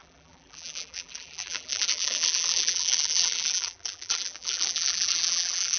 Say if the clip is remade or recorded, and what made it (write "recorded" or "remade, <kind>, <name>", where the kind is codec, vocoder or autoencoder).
remade, vocoder, BigVGAN v2